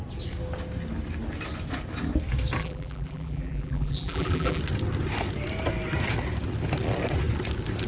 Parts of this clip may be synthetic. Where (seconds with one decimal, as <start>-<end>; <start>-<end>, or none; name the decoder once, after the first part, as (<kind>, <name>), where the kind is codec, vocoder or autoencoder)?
2.6-4.6 (vocoder, BigVGAN v2)